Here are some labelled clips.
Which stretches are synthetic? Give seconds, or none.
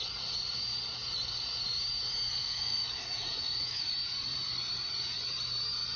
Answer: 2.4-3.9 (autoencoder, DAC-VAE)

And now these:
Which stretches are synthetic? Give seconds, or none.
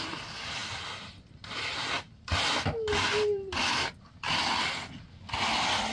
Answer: none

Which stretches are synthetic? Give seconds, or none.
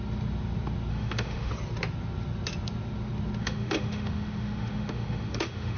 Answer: 0.9-1.5 (autoencoder, DAC-VAE); 3.4-5.8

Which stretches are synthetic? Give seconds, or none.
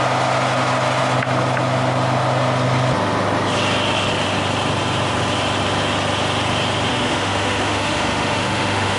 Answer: 6.9-9.0 (autoencoder, DAC-VAE)